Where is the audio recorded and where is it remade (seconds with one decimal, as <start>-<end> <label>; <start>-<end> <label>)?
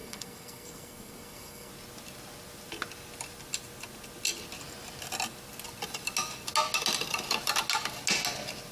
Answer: 0.0-1.7 remade; 1.7-8.7 recorded